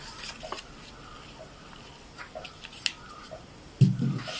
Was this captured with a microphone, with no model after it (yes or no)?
yes